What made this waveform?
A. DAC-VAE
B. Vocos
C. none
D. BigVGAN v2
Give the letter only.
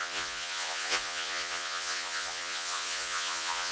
B